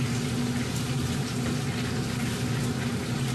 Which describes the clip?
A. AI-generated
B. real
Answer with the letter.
B